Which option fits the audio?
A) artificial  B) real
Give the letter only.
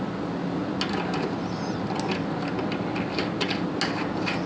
B